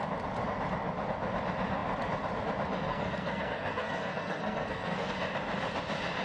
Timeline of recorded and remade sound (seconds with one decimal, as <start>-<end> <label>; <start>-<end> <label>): 0.0-2.9 recorded; 2.9-5.1 remade; 5.1-6.2 recorded